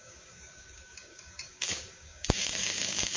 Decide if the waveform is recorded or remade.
remade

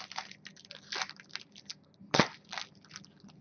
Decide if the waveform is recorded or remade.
recorded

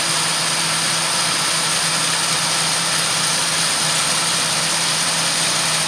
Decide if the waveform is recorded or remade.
recorded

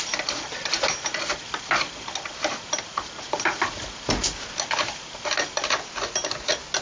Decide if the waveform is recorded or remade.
recorded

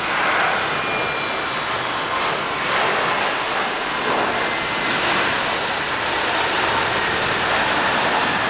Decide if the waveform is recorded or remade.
recorded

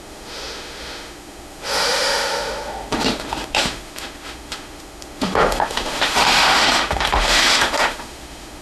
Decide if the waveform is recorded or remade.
remade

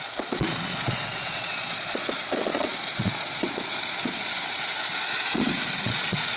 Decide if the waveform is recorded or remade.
remade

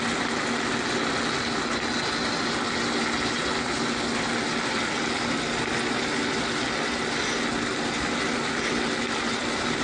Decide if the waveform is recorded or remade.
recorded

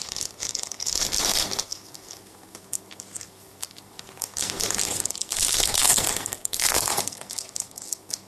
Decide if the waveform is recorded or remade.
remade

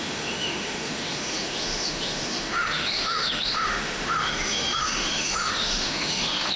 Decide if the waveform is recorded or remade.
remade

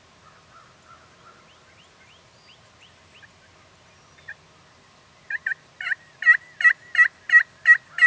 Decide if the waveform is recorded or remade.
recorded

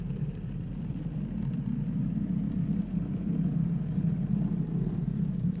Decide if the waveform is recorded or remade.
remade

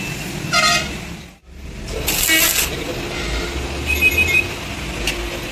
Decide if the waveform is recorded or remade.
recorded